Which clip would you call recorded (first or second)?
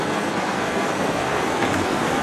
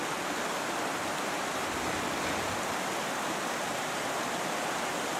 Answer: second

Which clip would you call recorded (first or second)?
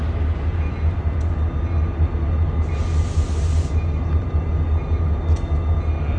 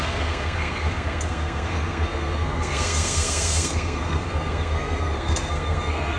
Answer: first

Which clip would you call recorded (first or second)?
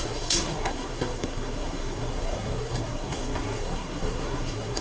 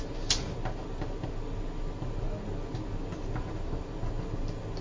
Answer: second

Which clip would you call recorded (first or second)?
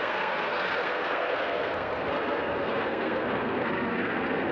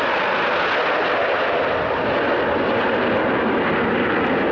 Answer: second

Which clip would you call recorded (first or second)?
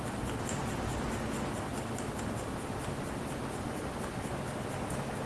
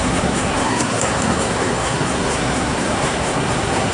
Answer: first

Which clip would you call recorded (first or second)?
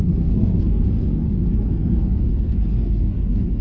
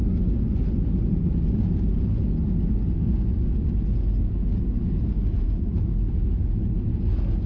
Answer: second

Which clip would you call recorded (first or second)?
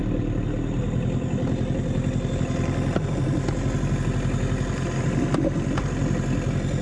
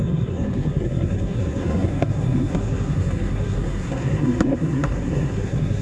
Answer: first